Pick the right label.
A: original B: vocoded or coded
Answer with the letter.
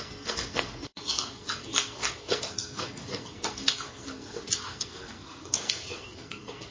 B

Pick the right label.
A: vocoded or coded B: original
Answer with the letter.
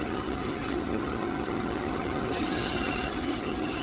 A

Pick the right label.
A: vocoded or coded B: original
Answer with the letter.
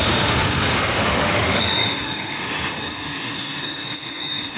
A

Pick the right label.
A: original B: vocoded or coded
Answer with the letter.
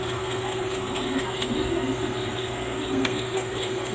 B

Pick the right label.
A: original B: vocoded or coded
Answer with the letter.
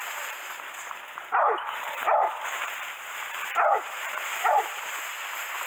B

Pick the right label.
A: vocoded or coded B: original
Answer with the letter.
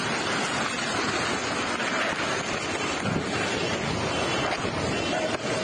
B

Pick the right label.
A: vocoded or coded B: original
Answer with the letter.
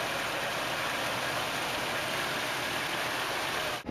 B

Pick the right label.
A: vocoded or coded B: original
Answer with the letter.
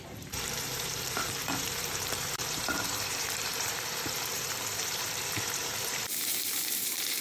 A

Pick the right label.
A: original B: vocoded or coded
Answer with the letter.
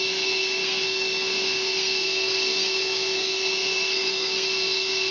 B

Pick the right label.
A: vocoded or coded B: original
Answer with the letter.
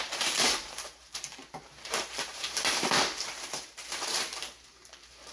A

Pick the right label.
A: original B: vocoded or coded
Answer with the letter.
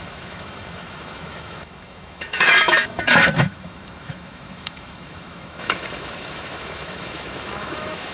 B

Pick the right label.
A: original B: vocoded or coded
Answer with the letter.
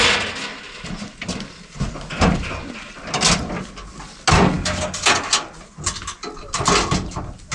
A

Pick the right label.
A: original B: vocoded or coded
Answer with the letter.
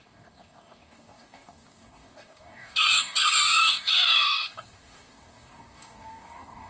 B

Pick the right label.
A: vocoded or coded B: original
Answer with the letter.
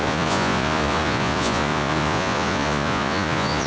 A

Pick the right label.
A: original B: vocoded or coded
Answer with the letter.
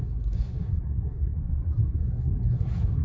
B